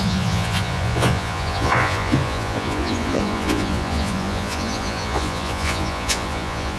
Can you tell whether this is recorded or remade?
remade